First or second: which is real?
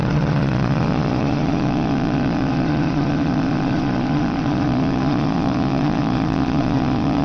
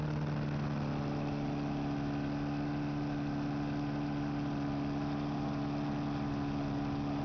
second